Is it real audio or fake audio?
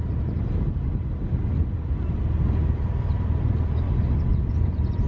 fake